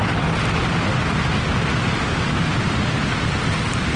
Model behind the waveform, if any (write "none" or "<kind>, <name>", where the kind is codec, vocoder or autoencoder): none